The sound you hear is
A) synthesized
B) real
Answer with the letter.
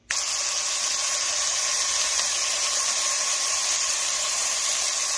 B